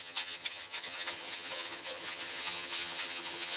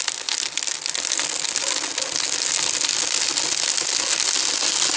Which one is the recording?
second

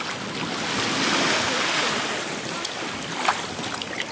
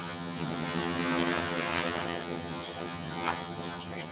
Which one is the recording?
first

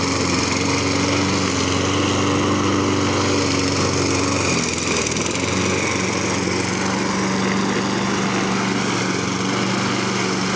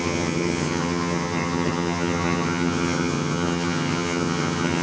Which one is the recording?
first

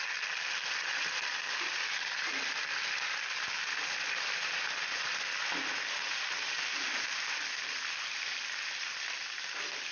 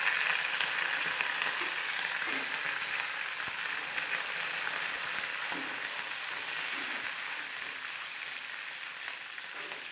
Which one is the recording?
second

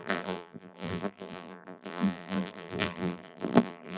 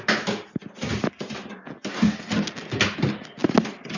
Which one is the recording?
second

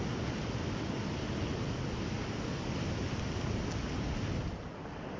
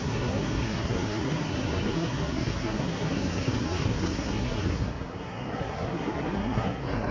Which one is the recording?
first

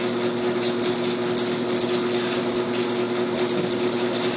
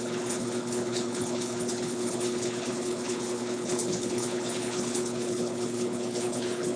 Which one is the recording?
first